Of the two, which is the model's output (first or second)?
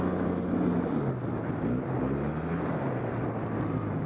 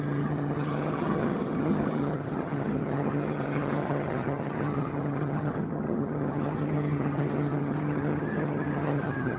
second